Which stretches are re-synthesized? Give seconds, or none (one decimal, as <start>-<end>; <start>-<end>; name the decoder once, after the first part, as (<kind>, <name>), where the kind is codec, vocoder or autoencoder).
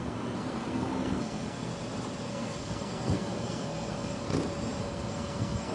0.0-1.7 (codec, SNAC); 2.3-4.3; 4.8-5.7